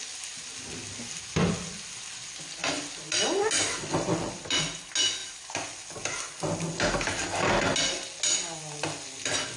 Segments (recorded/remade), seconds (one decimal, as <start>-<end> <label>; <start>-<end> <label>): 0.0-9.6 recorded